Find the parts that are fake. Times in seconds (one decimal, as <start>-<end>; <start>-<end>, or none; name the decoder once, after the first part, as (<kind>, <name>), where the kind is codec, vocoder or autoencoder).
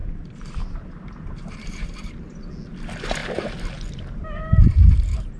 0.0-2.1 (vocoder, BigVGAN v2)